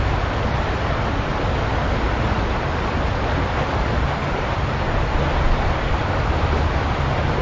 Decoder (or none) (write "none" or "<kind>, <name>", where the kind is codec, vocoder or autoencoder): none